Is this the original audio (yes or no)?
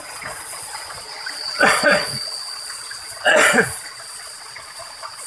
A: no